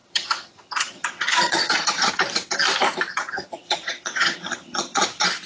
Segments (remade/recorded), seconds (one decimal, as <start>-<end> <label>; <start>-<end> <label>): 0.0-2.1 remade; 2.1-3.1 recorded; 3.1-5.0 remade; 5.0-5.5 recorded